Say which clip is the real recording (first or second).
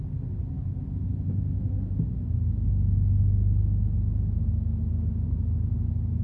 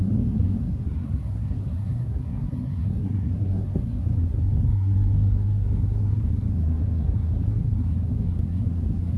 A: first